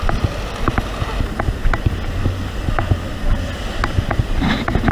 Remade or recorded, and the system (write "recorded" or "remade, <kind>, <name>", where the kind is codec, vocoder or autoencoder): recorded